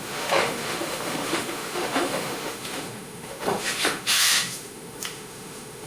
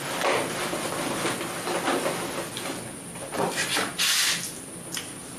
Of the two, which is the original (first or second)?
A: second